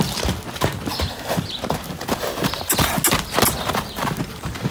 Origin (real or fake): real